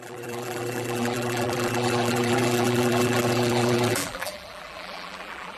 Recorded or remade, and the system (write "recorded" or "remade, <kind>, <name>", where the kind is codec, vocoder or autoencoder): remade, vocoder, BigVGAN v2